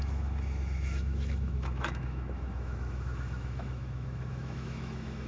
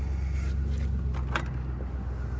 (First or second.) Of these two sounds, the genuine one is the second